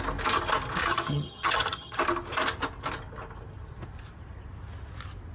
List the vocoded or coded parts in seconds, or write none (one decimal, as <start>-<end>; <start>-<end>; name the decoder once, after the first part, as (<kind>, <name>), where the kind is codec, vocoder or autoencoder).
0.8-2.0 (vocoder, HiFi-GAN)

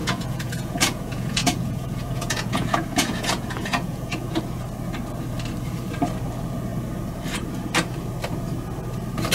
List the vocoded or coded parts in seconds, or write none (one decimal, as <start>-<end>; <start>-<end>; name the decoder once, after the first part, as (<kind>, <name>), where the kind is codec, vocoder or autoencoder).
0.0-4.4 (vocoder, Vocos)

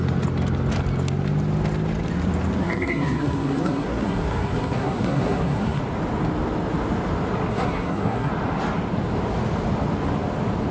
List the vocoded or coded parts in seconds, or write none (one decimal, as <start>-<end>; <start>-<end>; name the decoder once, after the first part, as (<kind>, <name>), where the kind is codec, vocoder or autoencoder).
2.6-5.8 (codec, SNAC); 7.5-8.3

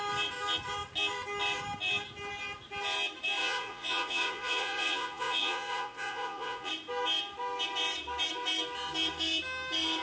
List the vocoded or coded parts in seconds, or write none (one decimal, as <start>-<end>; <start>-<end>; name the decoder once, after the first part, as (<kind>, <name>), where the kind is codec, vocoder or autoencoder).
3.4-6.7 (vocoder, Vocos)